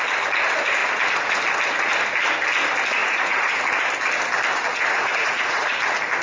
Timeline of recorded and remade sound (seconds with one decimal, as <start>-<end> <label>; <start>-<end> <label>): 0.0-3.0 recorded; 3.0-3.6 remade; 3.6-4.7 recorded; 4.7-5.8 remade; 5.8-6.2 recorded